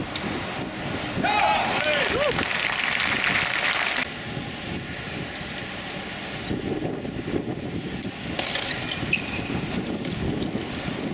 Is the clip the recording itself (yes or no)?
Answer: yes